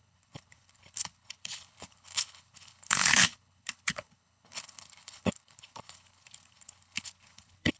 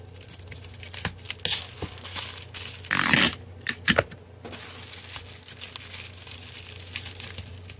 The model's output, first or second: first